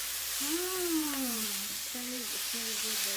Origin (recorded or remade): remade